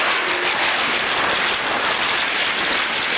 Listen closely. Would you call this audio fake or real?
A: real